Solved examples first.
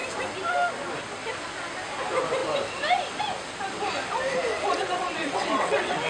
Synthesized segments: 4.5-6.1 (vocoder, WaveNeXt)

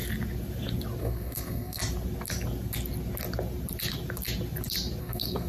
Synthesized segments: 1.0-1.8 (codec, SNAC); 5.0-5.5

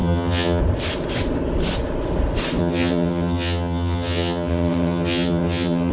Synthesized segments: 0.0-0.6 (vocoder, HiFi-GAN); 2.6-5.9

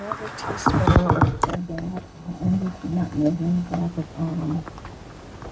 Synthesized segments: 1.5-3.8 (codec, HILCodec)

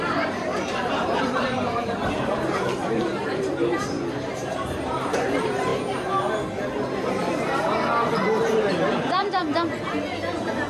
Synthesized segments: 0.0-5.7 (vocoder, BigVGAN v2); 9.0-9.4; 10.2-10.7

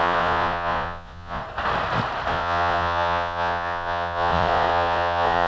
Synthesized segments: 0.0-1.4 (vocoder, Vocos); 2.3-5.5

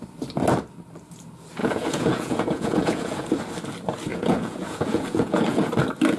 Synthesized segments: 1.6-3.3 (vocoder, Vocos); 4.1-5.7